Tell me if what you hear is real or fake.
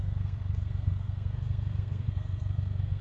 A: fake